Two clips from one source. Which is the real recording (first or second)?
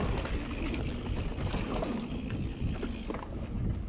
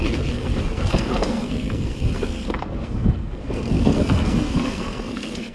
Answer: first